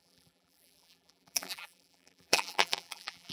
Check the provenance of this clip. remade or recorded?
remade